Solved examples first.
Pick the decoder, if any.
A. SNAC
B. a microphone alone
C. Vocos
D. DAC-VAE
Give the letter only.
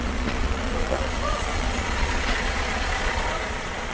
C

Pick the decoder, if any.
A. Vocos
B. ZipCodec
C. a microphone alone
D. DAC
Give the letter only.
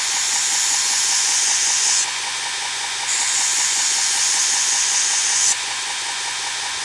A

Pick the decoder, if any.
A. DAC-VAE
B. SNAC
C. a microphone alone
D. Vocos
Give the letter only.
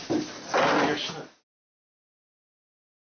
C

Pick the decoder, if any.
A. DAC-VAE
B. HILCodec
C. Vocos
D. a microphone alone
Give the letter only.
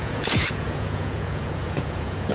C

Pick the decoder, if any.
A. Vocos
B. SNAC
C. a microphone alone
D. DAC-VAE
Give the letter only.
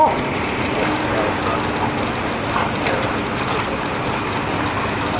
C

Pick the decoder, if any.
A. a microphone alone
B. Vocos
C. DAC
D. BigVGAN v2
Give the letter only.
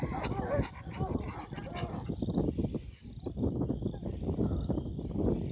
A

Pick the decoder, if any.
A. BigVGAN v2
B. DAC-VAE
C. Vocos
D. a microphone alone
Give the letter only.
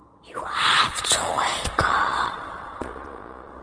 C